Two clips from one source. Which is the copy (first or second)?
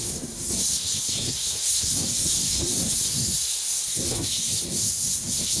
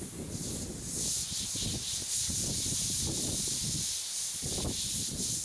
first